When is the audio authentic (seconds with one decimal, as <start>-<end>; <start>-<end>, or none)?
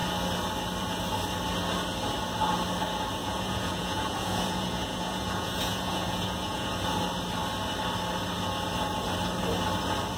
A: 0.0-3.2; 6.7-10.2